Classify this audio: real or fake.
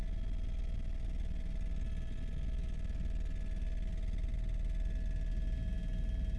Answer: real